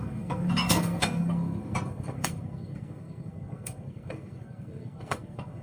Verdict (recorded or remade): remade